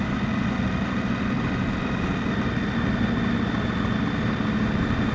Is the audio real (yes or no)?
yes